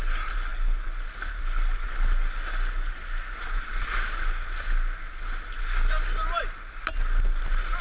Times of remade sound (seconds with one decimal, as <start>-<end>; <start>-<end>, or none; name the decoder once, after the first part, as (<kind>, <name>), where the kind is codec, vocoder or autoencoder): none